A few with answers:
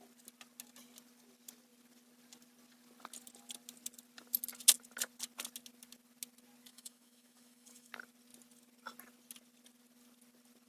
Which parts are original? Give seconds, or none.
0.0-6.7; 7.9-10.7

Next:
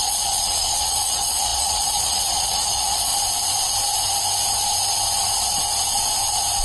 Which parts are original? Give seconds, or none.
3.1-6.6

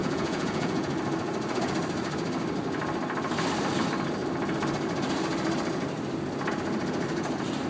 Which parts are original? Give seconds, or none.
0.9-7.7

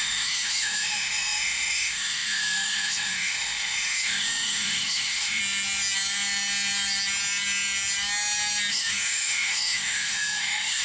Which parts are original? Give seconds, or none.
5.4-8.7

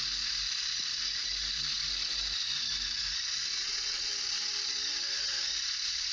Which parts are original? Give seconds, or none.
0.0-3.5; 4.1-6.1

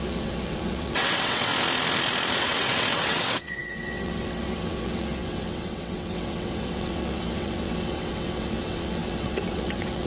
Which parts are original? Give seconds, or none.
1.5-2.3

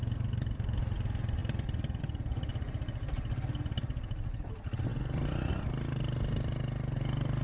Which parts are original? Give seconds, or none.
0.0-7.4